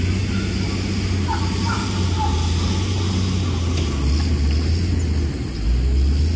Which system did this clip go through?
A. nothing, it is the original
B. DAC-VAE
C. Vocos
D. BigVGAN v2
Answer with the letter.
A